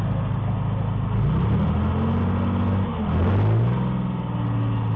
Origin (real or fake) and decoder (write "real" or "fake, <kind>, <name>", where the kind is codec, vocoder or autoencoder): real